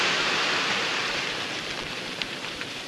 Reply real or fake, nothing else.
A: fake